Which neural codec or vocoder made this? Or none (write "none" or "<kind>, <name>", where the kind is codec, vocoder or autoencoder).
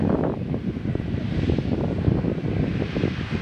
none